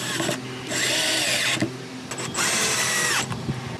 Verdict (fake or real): real